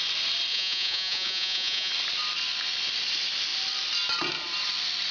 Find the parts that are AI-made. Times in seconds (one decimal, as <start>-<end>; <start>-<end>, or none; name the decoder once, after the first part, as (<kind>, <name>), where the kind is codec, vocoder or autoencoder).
0.5-1.9 (vocoder, Vocos)